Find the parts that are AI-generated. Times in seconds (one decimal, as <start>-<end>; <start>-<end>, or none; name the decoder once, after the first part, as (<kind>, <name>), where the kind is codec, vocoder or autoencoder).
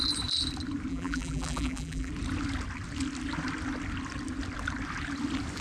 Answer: 0.9-2.1 (vocoder, BigVGAN v2)